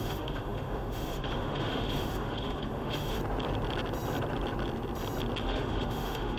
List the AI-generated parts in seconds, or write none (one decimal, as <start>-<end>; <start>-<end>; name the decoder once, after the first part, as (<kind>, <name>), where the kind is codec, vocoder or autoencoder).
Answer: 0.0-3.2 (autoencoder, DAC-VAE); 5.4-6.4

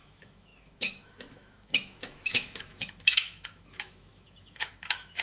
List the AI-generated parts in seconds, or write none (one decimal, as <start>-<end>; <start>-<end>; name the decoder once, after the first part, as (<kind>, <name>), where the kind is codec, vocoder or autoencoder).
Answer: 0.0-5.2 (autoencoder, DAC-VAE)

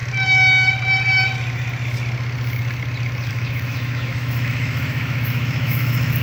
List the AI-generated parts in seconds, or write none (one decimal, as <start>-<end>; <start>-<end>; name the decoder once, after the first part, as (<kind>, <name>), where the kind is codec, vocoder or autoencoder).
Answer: 3.3-6.2 (autoencoder, DAC-VAE)